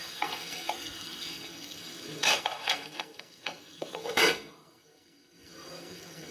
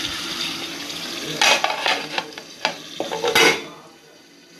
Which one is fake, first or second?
first